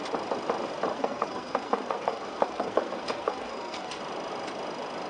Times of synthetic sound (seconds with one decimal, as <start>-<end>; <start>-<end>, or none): 0.9-4.0